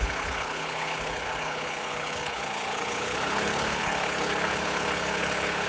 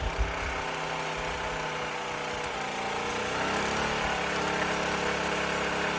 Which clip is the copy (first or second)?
first